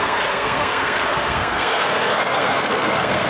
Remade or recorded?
remade